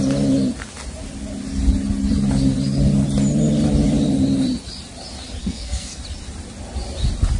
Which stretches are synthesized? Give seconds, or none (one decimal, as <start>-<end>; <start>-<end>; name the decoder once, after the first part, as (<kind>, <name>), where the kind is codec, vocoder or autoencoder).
5.4-6.0 (codec, SNAC)